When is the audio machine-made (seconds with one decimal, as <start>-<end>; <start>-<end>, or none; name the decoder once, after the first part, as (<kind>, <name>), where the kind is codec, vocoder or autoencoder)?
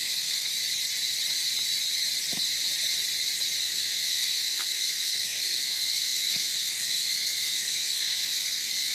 0.0-0.5 (codec, SNAC); 3.6-8.9